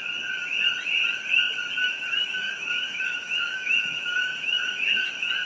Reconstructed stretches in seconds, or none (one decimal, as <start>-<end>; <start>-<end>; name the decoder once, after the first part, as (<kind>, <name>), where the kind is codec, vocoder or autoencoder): 1.8-5.1 (autoencoder, DAC-VAE)